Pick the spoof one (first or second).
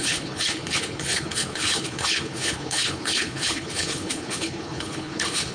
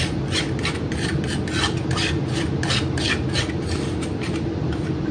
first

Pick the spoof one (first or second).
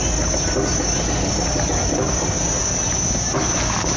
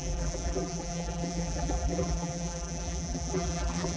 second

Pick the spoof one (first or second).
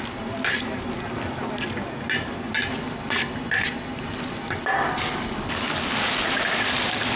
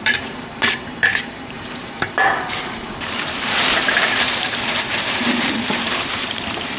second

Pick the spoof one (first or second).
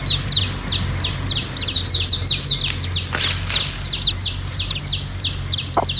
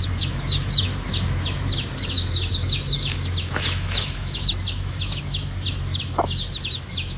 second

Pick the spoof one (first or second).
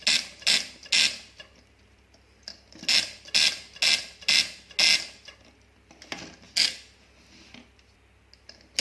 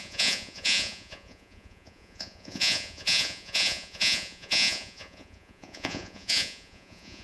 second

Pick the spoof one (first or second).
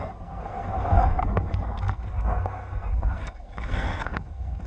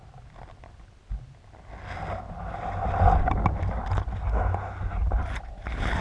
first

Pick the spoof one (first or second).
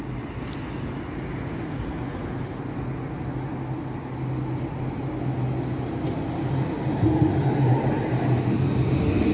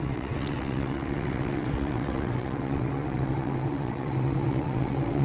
second